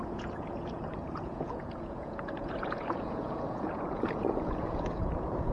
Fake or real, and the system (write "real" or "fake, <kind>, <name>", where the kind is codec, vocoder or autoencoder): fake, vocoder, Vocos